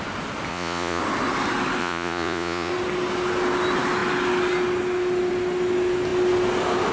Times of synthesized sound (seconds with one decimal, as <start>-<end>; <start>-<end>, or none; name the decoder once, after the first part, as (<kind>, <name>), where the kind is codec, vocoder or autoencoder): 0.5-1.0 (vocoder, Vocos); 1.8-2.7